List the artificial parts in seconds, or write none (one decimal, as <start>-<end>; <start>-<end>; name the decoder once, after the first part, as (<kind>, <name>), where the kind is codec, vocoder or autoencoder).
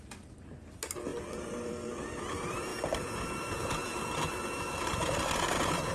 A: 1.1-2.2 (vocoder, BigVGAN v2)